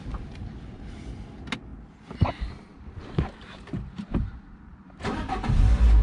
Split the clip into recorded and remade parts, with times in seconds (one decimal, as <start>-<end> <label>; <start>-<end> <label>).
0.0-4.7 recorded; 4.7-5.5 remade; 5.5-6.0 recorded